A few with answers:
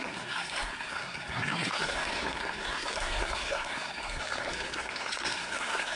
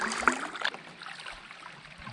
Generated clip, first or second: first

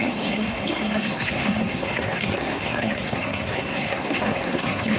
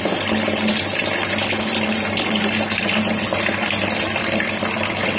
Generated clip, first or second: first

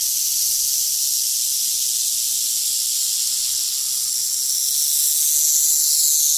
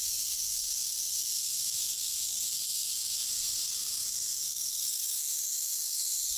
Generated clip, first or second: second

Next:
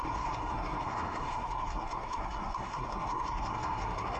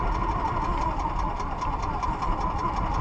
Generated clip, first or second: first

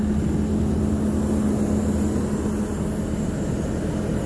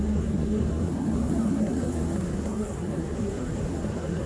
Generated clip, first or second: second